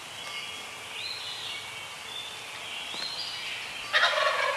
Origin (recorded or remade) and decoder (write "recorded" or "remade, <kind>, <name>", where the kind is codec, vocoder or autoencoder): recorded